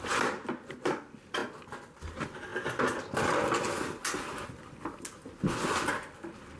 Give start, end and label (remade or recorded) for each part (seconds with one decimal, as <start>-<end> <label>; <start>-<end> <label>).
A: 0.0-6.6 recorded